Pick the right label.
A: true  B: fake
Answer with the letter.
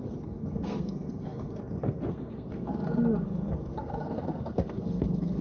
B